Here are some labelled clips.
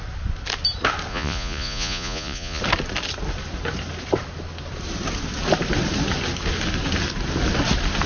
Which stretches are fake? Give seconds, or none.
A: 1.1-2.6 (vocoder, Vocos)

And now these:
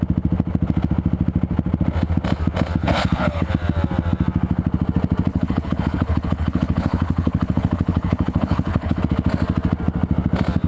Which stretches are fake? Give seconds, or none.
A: 2.8-3.5 (codec, HILCodec); 5.3-9.0

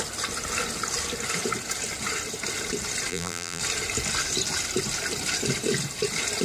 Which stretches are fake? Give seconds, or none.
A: 3.1-3.6 (vocoder, BigVGAN v2)

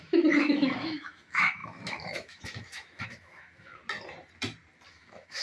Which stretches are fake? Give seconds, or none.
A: 0.0-3.8 (autoencoder, DAC-VAE); 4.9-5.4

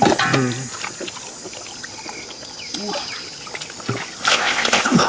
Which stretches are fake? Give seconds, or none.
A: 4.3-5.1 (codec, ZipCodec)

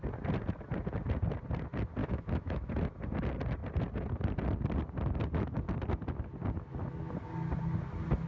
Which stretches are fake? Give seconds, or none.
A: 2.0-2.7 (autoencoder, DAC-VAE)

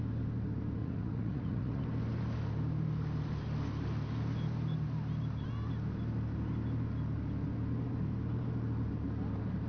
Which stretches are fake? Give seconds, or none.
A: 0.8-1.8 (vocoder, Vocos)

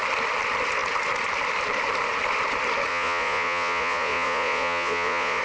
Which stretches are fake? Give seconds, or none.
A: 2.9-5.4 (vocoder, Vocos)